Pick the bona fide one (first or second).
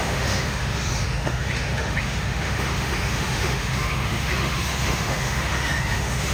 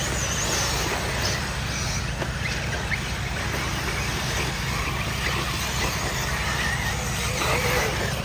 second